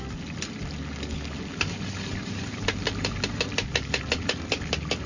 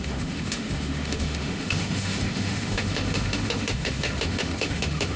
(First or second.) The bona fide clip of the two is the first